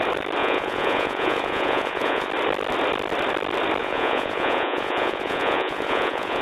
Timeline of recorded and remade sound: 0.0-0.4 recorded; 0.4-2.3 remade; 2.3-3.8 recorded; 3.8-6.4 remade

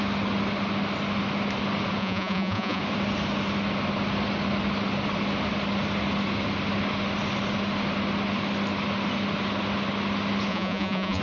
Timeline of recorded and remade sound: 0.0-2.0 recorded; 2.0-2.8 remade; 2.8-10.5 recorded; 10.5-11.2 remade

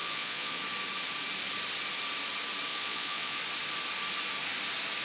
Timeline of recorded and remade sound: 0.0-0.6 remade; 0.6-2.7 recorded; 2.7-3.4 remade; 3.4-5.0 recorded

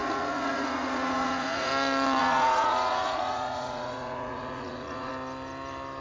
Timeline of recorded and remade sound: 0.0-1.7 remade; 1.7-2.2 recorded; 2.2-5.1 remade; 5.1-6.0 recorded

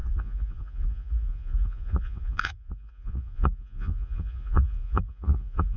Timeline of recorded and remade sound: 0.0-5.8 remade

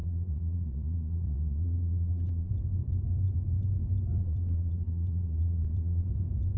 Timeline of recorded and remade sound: 0.0-2.5 remade; 2.5-4.2 recorded; 4.2-6.1 remade; 6.1-6.6 recorded

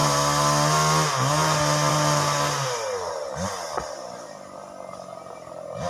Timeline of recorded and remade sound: 0.0-5.9 recorded

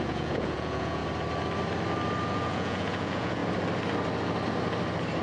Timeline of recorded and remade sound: 0.0-1.0 remade; 1.0-2.3 recorded; 2.3-3.4 remade; 3.4-5.2 recorded